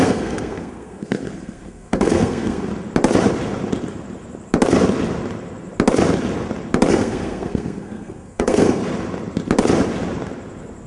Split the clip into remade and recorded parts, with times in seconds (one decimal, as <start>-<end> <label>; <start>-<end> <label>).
0.0-2.7 remade; 2.7-6.9 recorded; 6.9-8.8 remade; 8.8-10.9 recorded